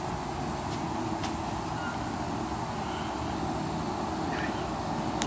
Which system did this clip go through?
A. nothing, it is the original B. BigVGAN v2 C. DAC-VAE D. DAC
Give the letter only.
A